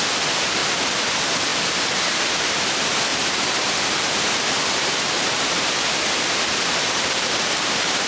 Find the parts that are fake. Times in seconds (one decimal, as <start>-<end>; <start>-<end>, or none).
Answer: 3.1-8.1